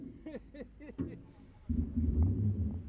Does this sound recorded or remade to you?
recorded